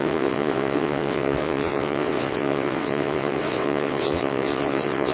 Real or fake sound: fake